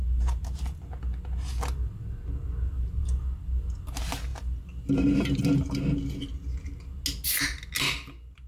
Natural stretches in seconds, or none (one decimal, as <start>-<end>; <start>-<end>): 0.0-8.5